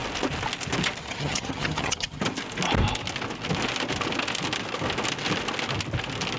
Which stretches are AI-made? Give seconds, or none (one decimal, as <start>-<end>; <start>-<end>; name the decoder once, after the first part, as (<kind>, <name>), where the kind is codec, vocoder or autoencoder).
1.0-2.2 (vocoder, HiFi-GAN)